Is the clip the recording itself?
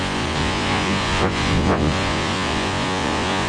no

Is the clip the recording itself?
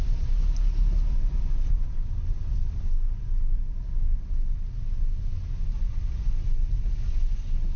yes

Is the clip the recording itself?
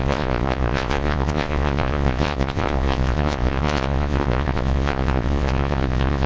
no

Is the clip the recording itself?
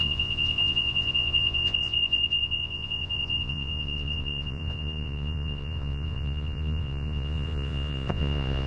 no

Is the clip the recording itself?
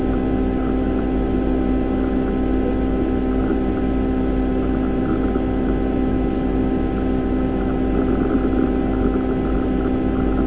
yes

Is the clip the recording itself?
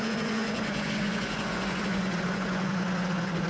no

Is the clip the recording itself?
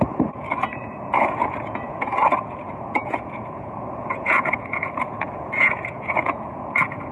no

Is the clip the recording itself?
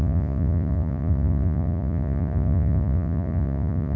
no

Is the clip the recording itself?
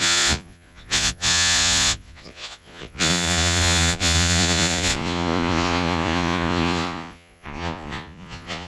no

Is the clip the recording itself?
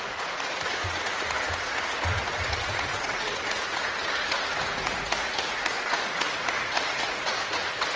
no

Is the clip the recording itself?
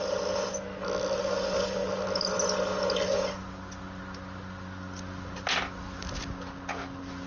yes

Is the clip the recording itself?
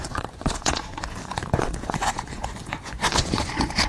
no